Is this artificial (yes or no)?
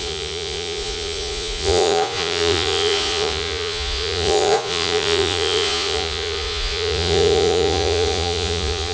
yes